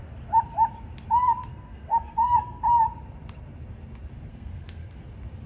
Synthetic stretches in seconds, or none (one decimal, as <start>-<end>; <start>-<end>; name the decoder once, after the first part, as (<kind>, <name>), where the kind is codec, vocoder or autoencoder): 1.5-2.6 (codec, SNAC); 4.3-5.0